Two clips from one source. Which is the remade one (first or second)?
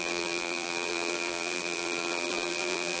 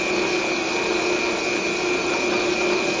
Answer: first